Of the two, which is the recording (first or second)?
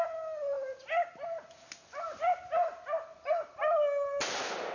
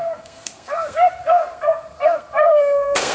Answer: first